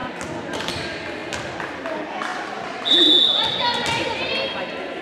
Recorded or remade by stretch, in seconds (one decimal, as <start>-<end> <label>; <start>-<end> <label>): 0.0-5.0 recorded